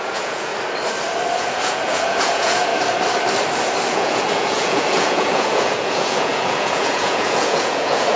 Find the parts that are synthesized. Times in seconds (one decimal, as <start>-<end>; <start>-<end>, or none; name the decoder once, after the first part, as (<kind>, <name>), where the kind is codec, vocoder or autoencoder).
0.0-0.5 (vocoder, Vocos); 1.4-2.7; 3.9-8.2

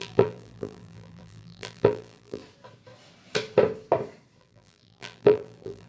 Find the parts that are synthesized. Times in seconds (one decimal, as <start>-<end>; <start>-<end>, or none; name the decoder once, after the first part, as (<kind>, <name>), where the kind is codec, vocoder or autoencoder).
0.0-2.4 (vocoder, BigVGAN v2); 4.4-5.9

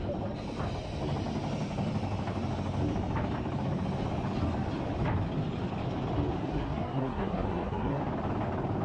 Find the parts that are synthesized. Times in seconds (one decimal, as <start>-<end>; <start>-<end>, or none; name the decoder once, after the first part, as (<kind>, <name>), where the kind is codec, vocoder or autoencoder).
6.4-8.0 (codec, SNAC)

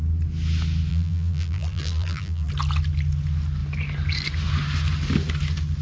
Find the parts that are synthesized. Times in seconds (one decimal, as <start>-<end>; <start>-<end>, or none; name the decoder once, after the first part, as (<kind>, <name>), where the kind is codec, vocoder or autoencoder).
0.9-2.5 (vocoder, BigVGAN v2)

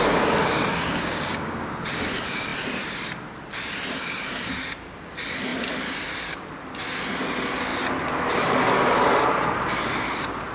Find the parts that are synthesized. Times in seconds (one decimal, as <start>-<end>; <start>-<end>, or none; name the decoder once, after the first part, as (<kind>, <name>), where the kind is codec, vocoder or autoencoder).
0.7-1.7 (codec, DAC)

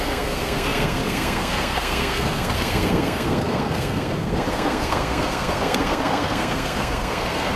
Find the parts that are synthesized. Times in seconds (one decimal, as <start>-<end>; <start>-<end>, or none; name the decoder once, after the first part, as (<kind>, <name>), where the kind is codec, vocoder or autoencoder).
0.0-7.6 (codec, SNAC)